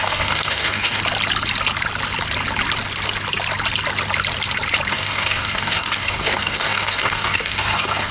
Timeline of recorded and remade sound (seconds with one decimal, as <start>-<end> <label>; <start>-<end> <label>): 0.0-1.0 remade; 1.0-4.9 recorded; 4.9-8.1 remade